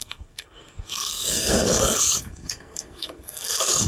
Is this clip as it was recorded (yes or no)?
no